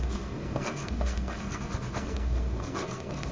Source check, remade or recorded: remade